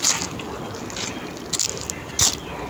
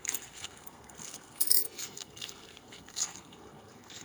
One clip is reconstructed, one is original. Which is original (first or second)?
first